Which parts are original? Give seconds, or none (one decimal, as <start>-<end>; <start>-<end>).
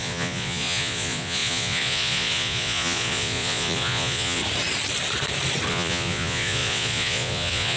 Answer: 4.4-5.7